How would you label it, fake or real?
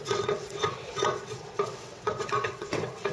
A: fake